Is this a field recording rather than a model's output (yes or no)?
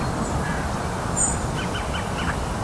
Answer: yes